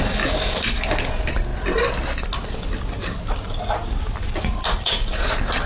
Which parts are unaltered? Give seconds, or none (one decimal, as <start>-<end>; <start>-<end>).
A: 0.0-5.7